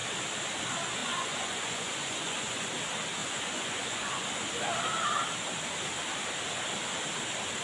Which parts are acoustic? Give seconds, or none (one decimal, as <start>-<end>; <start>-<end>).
0.0-1.0; 2.7-3.2; 4.4-7.6

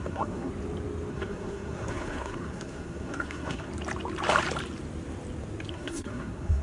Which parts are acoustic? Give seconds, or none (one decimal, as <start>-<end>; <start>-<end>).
0.5-1.1; 3.7-5.7

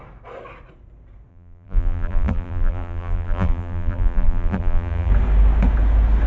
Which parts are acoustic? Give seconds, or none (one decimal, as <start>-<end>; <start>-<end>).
0.0-1.3; 5.1-6.3

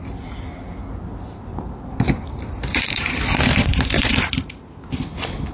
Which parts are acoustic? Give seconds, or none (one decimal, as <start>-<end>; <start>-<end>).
0.0-1.5; 3.1-3.7; 5.0-5.5